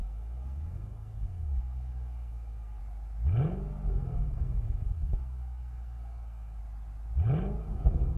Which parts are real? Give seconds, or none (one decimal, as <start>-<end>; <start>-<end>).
2.8-3.9; 6.6-7.6